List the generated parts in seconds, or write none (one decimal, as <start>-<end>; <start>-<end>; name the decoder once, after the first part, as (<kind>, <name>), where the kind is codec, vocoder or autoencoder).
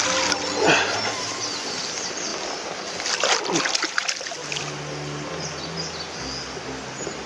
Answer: none